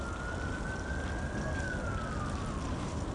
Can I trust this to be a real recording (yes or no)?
yes